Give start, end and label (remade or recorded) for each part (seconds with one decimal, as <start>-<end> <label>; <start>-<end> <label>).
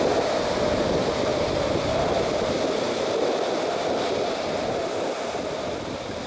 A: 0.0-6.3 recorded